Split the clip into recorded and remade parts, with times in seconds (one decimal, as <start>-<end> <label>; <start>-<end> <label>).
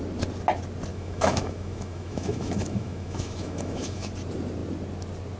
0.0-0.9 recorded; 0.9-4.1 remade; 4.1-5.4 recorded